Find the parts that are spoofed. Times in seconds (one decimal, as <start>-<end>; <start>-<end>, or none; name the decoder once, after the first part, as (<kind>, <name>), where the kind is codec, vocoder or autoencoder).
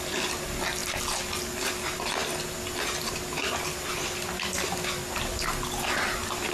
none